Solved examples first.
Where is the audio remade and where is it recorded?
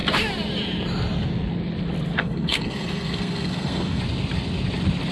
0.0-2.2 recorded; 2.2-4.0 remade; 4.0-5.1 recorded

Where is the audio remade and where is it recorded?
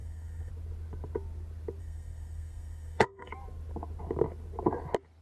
0.0-0.5 remade; 0.5-1.8 recorded; 1.8-3.3 remade; 3.3-5.2 recorded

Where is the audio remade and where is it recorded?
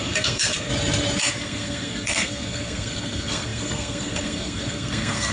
0.0-0.7 remade; 0.7-1.2 recorded; 1.2-5.3 remade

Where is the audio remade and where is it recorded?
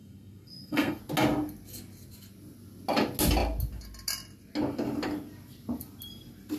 0.0-1.0 remade; 1.0-6.6 recorded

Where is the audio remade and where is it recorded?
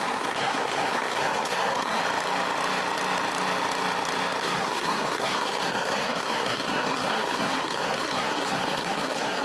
0.0-2.0 remade; 2.0-4.4 recorded; 4.4-9.4 remade